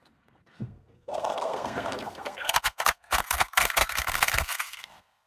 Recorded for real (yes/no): no